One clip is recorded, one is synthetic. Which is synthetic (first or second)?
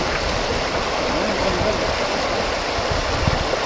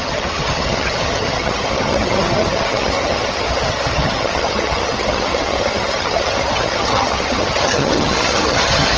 second